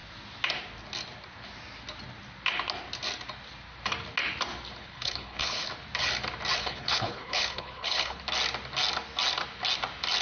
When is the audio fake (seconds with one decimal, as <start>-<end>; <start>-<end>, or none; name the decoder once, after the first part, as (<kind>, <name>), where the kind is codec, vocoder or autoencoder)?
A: 4.8-5.7 (codec, HILCodec); 6.6-8.2